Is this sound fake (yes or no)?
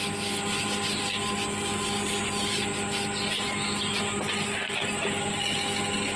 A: no